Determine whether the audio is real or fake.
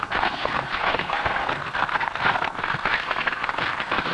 fake